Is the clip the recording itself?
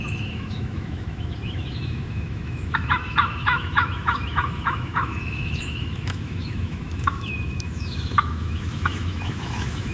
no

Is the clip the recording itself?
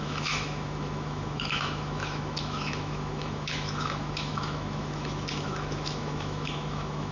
no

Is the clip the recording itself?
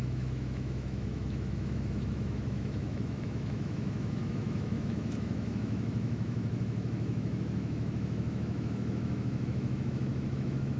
no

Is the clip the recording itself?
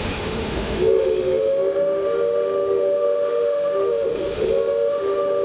no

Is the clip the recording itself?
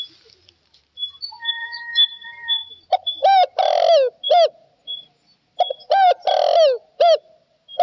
yes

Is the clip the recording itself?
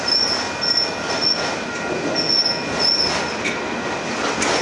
yes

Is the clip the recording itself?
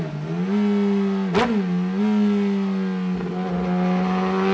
yes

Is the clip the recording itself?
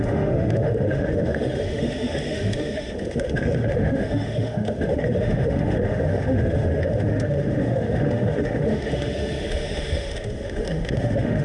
no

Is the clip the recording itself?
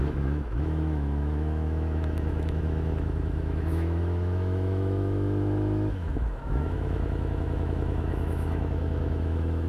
no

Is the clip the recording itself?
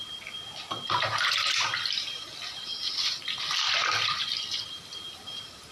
yes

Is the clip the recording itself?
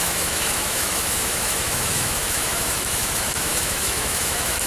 no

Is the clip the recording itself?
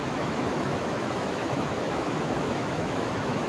no